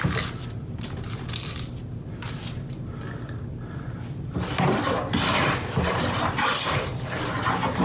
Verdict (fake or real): real